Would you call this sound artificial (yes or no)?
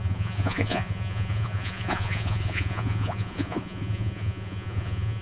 yes